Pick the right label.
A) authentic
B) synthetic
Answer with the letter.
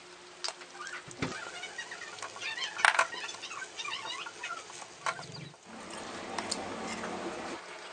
A